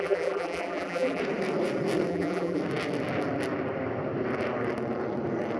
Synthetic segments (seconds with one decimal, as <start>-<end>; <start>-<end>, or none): 0.0-1.2; 2.1-2.6